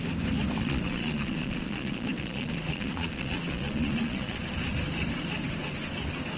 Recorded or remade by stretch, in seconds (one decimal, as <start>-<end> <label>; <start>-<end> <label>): 0.0-0.6 recorded; 0.6-4.4 remade; 4.4-6.4 recorded